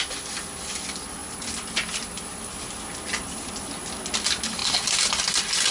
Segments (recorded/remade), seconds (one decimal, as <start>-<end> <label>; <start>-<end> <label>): 0.0-1.2 recorded; 1.2-3.5 remade; 3.5-4.6 recorded; 4.6-5.1 remade; 5.1-5.7 recorded